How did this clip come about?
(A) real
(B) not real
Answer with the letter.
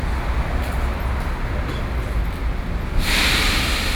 A